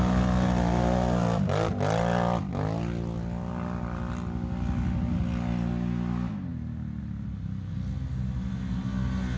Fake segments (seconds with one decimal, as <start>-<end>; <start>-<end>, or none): none